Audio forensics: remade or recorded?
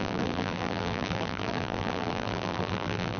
remade